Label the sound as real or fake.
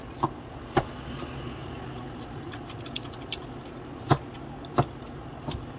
real